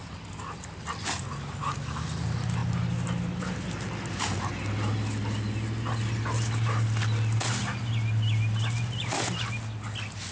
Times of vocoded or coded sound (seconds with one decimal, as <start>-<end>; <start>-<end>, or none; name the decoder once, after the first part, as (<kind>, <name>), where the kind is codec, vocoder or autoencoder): none